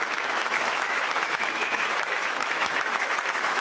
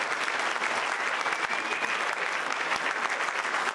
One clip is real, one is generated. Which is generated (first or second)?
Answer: first